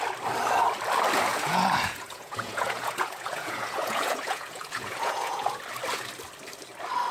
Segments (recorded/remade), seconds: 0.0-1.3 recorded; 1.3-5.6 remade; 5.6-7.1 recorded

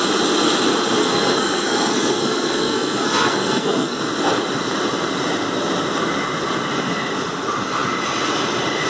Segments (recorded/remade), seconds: 0.0-1.0 recorded; 1.0-4.0 remade; 4.0-8.9 recorded

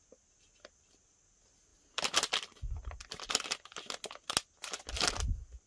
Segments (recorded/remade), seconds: 0.0-5.7 recorded

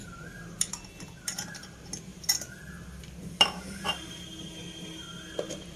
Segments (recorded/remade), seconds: 0.0-5.8 recorded

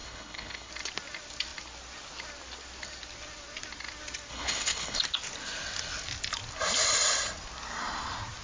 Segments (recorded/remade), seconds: 0.0-0.7 remade; 0.7-4.3 recorded; 4.3-5.0 remade; 5.0-8.4 recorded